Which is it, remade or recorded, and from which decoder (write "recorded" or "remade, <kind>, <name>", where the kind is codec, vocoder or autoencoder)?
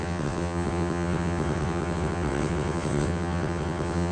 remade, vocoder, WaveNeXt